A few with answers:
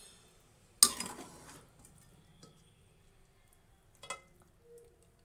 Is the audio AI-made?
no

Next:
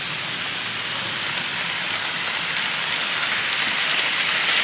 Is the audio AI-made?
no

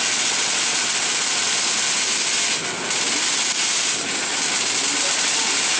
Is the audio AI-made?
no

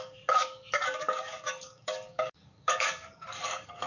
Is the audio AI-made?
yes